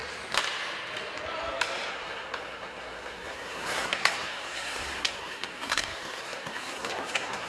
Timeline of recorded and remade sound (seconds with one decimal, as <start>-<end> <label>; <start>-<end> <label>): 0.0-1.9 recorded; 1.9-7.5 remade